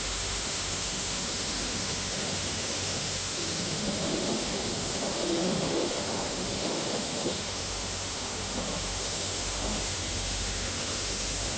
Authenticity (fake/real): fake